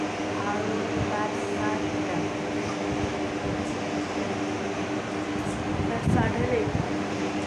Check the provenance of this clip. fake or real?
real